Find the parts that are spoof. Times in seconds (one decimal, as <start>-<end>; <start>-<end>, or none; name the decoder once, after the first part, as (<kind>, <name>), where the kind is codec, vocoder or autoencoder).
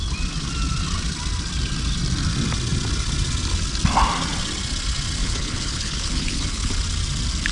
5.2-6.7 (codec, HILCodec)